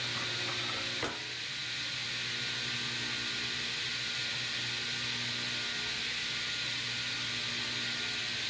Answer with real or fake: real